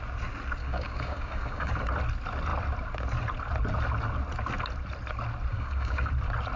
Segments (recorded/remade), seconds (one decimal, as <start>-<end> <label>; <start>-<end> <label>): 0.0-0.6 recorded; 0.6-1.7 remade; 1.7-5.5 recorded; 5.5-6.1 remade; 6.1-6.6 recorded